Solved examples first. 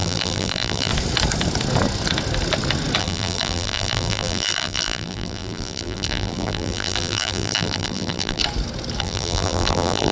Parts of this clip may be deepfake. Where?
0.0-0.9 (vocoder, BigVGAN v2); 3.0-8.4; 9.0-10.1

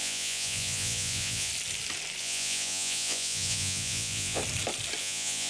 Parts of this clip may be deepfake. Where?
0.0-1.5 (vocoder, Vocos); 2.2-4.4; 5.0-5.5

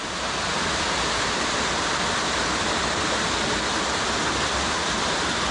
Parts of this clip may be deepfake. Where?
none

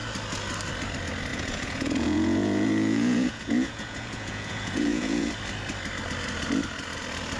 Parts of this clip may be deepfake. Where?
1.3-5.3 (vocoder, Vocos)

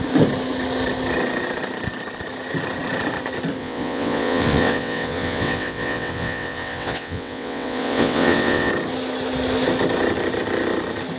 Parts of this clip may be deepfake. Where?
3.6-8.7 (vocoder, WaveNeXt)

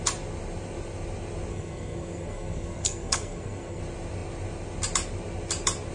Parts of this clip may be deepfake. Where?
1.5-3.8 (codec, SNAC)

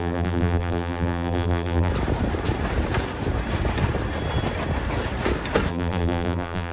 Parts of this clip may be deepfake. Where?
0.0-1.9 (vocoder, BigVGAN v2); 5.7-6.7